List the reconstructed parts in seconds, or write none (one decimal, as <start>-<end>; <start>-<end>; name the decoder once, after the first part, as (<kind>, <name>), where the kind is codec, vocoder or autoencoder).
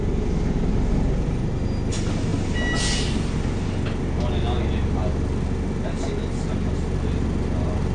none